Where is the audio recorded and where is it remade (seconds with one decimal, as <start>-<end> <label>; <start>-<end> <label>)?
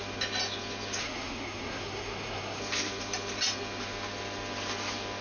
0.0-1.0 recorded; 1.0-2.6 remade; 2.6-5.2 recorded